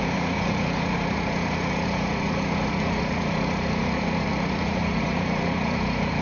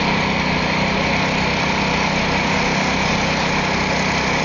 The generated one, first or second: first